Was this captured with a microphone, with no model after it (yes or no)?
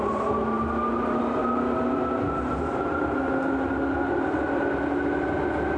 yes